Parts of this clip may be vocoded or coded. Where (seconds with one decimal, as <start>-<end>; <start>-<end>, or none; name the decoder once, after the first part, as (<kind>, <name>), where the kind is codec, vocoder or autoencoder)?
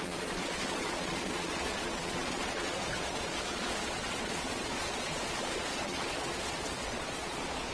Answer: 0.0-7.7 (vocoder, Vocos)